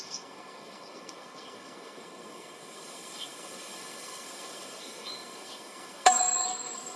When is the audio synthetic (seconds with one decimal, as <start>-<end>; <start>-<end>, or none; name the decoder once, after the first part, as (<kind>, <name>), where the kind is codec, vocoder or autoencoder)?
0.0-7.0 (codec, SNAC)